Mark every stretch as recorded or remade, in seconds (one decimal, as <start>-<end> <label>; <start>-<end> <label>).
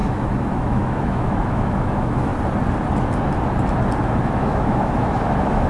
0.0-2.3 remade; 2.3-4.0 recorded; 4.0-5.7 remade